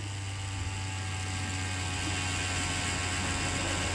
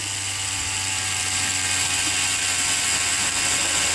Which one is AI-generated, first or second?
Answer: second